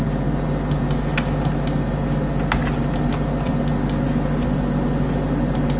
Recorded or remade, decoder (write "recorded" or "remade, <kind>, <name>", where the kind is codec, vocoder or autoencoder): recorded